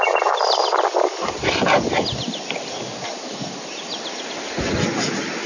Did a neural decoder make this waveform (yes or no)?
no